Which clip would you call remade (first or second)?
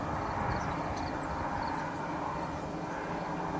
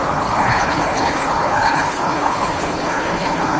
second